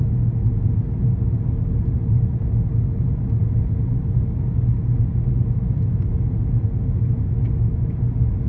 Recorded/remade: recorded